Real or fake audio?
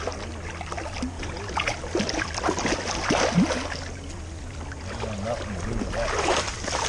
real